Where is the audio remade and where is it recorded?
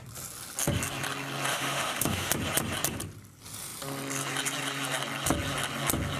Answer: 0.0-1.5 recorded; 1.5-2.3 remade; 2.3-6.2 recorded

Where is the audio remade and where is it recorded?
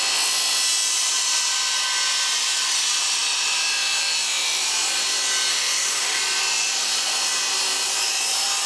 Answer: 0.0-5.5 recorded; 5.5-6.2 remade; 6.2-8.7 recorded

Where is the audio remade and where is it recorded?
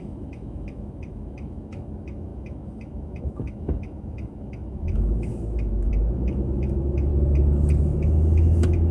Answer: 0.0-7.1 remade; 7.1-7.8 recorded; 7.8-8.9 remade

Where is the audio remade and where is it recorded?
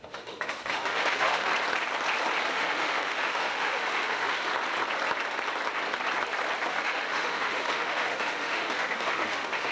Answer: 0.0-1.5 remade; 1.5-2.5 recorded; 2.5-4.5 remade; 4.5-6.7 recorded; 6.7-9.7 remade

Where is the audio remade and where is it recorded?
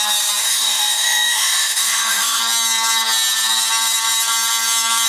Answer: 0.0-0.4 recorded; 0.4-2.4 remade; 2.4-5.1 recorded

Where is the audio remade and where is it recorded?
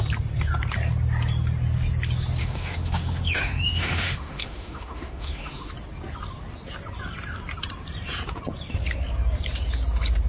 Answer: 0.0-2.4 recorded; 2.4-5.7 remade; 5.7-10.3 recorded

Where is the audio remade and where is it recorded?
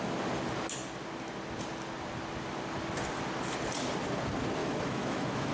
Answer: 0.0-4.6 recorded; 4.6-5.5 remade